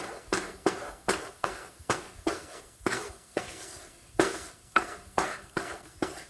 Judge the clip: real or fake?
fake